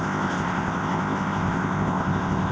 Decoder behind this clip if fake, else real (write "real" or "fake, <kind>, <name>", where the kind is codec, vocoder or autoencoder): fake, codec, ZipCodec